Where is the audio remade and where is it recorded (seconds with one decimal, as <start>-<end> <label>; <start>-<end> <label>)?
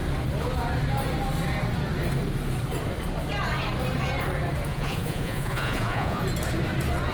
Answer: 0.0-4.7 recorded; 4.7-6.2 remade; 6.2-7.1 recorded